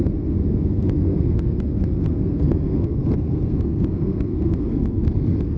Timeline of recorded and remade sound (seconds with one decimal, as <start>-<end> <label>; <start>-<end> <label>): 0.0-5.6 remade